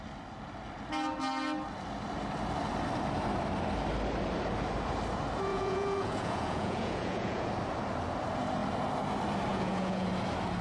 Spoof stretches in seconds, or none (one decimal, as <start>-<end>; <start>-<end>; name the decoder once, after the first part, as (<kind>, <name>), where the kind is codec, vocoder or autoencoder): 5.5-7.5 (vocoder, Vocos); 9.5-10.1